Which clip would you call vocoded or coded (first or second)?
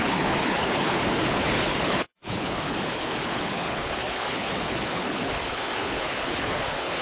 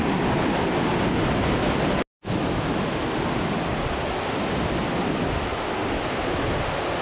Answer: first